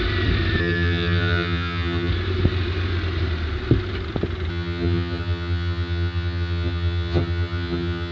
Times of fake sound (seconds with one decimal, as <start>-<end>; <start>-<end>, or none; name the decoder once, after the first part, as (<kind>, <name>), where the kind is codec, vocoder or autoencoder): 0.6-2.1 (vocoder, HiFi-GAN); 4.5-8.1